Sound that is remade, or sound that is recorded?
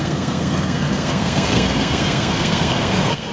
remade